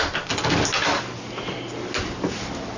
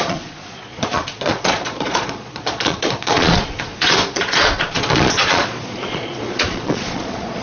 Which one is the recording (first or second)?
first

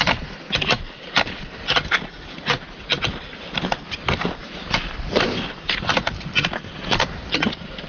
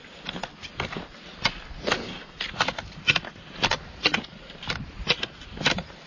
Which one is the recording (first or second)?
second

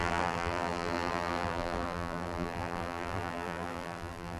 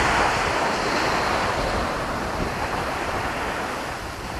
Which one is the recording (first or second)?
second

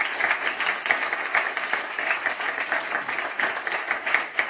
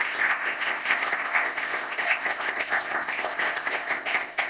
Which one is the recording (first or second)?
first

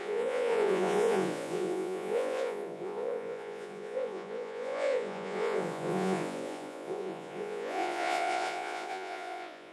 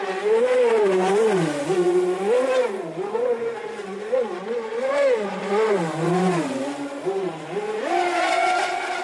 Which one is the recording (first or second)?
second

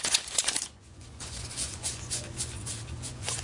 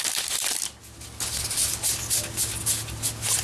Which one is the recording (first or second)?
second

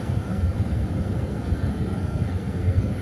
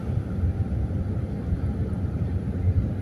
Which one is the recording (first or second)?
second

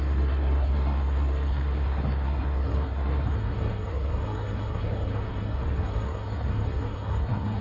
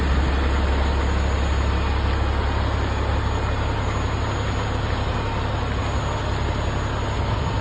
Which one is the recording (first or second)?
second